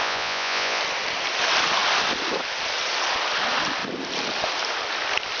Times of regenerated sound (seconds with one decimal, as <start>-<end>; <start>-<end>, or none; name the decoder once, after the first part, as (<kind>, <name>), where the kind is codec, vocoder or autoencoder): 0.0-0.8 (vocoder, Vocos)